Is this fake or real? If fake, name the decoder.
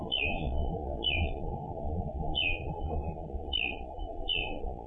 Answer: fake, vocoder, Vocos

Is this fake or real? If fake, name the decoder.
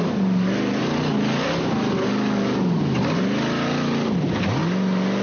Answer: real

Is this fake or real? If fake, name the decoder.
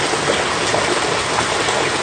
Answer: real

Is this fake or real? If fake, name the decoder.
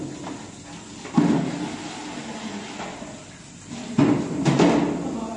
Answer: real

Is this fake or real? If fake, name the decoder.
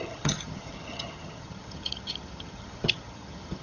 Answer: fake, vocoder, HiFi-GAN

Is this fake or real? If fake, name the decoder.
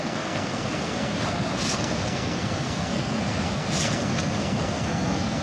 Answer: fake, codec, SNAC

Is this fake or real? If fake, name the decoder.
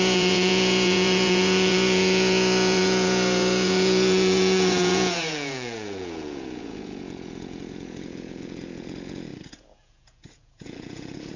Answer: fake, vocoder, Vocos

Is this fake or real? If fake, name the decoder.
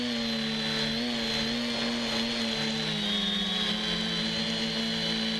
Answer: real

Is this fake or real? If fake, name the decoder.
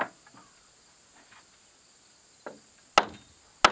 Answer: real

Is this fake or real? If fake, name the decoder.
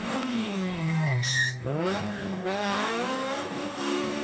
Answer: fake, codec, DAC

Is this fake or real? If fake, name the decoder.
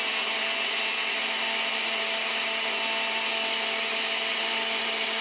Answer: real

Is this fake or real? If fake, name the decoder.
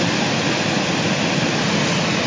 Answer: real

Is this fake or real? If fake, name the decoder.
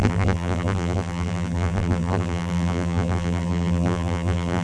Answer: fake, vocoder, BigVGAN v2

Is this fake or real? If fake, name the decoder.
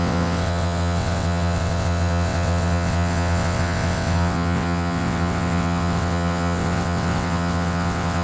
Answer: fake, vocoder, WaveNeXt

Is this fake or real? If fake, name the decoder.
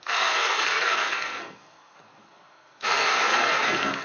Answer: fake, codec, SNAC